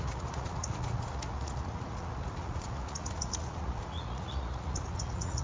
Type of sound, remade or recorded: remade